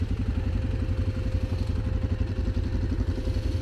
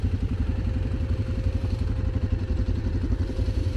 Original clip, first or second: first